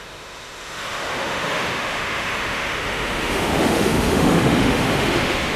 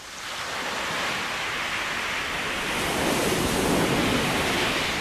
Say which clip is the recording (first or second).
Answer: second